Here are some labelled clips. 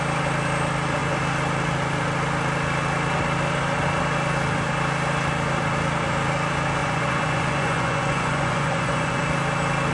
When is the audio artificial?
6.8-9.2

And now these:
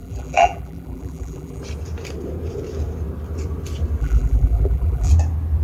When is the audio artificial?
0.0-1.6; 4.0-5.1

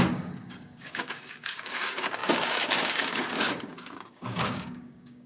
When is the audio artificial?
0.0-5.3

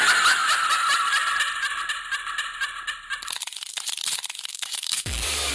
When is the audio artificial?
4.5-5.5

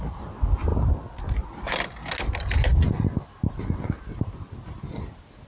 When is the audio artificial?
none

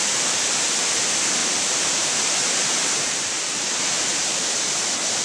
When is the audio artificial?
0.0-0.9; 1.4-4.5

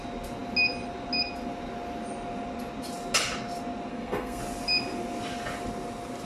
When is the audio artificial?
3.9-4.4

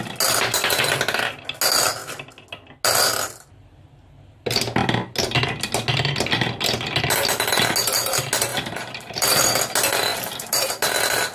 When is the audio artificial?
8.5-9.4; 10.1-10.7